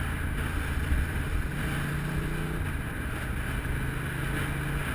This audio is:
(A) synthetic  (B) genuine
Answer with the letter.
B